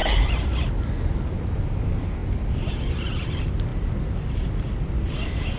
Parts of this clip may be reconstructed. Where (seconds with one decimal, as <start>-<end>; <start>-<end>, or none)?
0.0-0.8